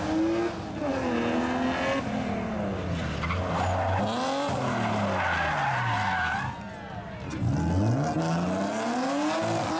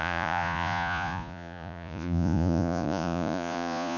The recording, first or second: first